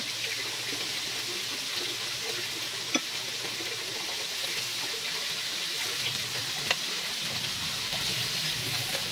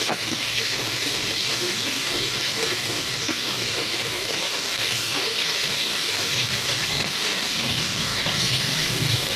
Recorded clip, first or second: first